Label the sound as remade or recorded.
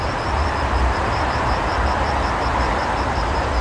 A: remade